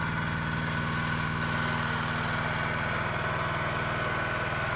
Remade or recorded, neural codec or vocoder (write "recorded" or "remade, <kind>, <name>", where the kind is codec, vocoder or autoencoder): recorded